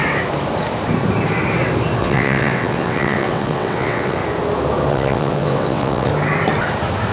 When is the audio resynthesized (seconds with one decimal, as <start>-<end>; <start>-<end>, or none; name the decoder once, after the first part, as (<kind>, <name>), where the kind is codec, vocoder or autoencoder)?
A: 2.0-4.2 (vocoder, WaveNeXt); 4.9-6.1